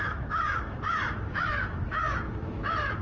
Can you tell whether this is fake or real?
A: fake